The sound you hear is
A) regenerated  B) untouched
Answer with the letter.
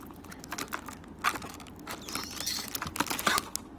B